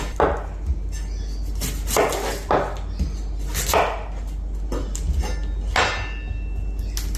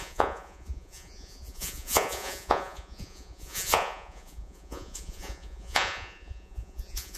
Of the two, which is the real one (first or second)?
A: first